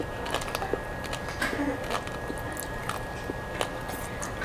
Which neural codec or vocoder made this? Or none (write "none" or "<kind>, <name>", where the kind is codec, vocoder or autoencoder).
none